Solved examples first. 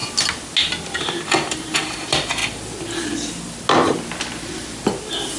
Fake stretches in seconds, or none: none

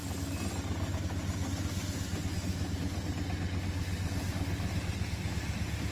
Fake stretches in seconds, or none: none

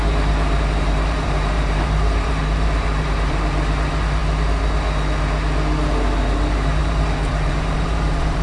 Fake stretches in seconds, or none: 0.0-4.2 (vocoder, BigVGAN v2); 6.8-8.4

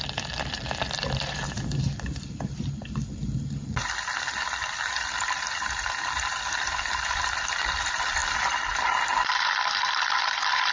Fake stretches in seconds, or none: 0.0-10.7 (vocoder, BigVGAN v2)